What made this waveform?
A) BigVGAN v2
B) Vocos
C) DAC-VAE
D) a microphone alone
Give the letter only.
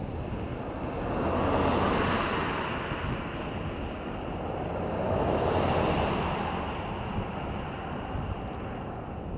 D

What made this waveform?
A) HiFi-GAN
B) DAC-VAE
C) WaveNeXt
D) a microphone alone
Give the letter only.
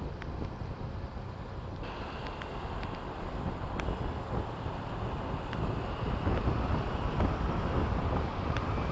D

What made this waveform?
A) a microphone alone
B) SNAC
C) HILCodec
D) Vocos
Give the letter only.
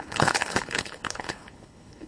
C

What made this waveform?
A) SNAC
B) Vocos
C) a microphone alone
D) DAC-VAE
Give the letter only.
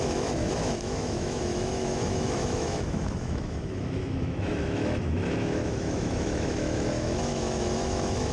D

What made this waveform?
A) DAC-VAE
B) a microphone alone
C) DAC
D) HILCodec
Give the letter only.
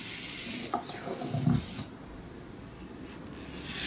B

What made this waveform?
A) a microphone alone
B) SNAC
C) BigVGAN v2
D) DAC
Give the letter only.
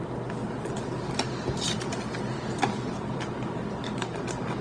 A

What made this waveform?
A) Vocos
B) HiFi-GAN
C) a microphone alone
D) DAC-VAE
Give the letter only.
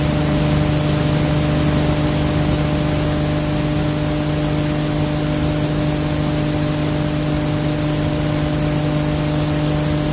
C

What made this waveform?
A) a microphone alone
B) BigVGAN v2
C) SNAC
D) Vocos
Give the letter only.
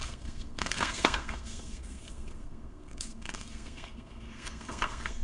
C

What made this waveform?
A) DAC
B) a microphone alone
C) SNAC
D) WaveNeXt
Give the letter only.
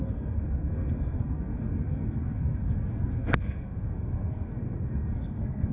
C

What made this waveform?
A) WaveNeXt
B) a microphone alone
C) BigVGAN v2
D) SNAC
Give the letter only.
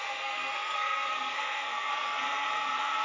D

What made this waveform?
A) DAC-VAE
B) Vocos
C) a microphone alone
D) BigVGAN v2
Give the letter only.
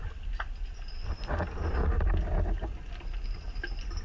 C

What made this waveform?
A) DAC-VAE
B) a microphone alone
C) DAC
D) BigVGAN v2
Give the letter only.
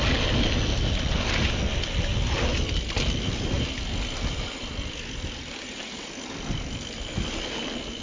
B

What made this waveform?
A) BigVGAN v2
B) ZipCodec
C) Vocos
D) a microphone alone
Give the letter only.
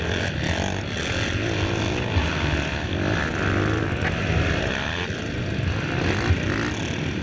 D